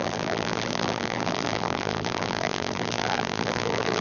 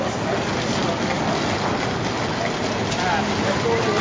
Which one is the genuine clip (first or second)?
second